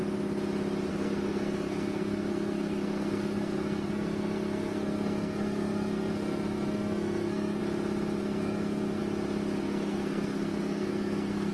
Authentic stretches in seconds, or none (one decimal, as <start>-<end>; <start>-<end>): 0.0-0.9; 7.6-8.2; 9.0-9.6